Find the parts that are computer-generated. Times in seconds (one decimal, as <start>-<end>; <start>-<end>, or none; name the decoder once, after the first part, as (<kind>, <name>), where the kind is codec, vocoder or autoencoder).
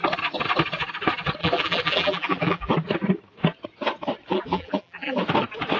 1.4-2.7 (vocoder, BigVGAN v2); 4.3-5.2